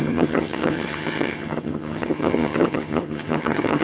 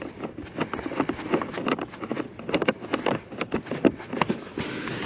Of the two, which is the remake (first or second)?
first